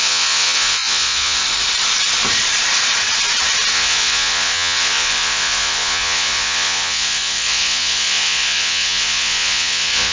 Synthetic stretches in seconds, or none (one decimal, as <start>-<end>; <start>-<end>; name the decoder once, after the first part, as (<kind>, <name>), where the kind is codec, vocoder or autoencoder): 0.0-1.4 (vocoder, Vocos); 3.7-10.1